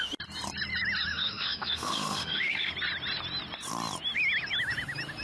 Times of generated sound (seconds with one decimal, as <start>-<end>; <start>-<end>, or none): 1.1-2.7